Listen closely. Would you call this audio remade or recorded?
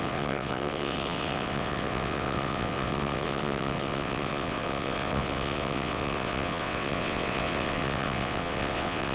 remade